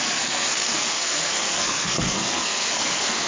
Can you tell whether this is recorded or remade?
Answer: remade